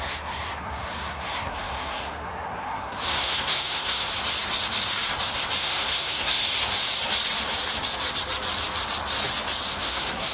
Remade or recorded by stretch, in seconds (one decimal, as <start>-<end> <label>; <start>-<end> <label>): 0.0-4.1 remade; 4.1-5.6 recorded; 5.6-6.4 remade; 6.4-9.8 recorded; 9.8-10.3 remade